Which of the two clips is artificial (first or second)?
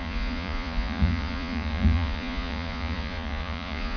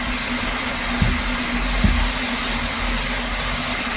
first